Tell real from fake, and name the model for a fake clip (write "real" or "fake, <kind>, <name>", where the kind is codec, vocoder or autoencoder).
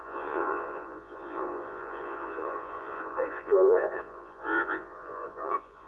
fake, vocoder, Vocos